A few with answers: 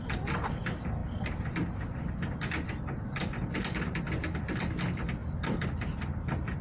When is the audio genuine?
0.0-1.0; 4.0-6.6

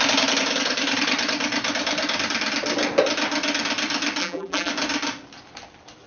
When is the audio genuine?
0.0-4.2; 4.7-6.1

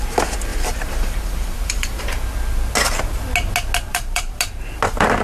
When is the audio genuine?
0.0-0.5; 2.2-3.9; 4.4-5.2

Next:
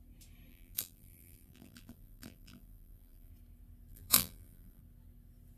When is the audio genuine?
0.0-0.5; 3.3-3.9; 4.8-5.6

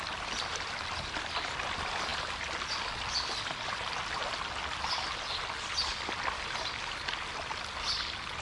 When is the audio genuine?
0.0-8.4